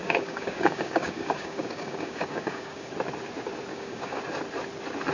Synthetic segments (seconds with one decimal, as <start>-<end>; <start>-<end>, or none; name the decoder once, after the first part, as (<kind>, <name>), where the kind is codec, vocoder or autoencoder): 0.0-2.9 (codec, DAC); 3.7-4.2